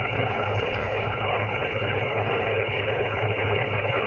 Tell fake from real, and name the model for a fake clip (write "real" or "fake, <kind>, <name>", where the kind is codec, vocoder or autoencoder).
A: fake, codec, HILCodec